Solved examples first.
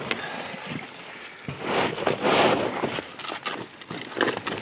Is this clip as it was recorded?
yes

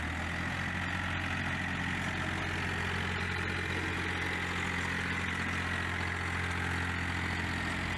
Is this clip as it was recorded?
yes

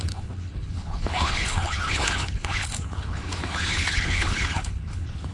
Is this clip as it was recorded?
no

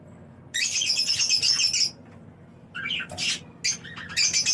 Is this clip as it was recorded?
yes